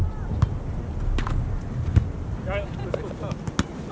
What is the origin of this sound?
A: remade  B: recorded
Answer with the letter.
B